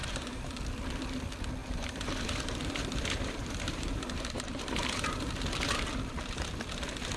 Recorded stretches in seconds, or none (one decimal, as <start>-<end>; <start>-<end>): 0.5-1.6; 5.3-7.2